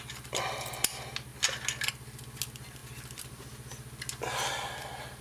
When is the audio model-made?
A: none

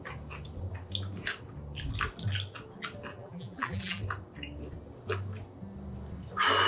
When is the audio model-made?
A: 3.1-4.0 (vocoder, BigVGAN v2)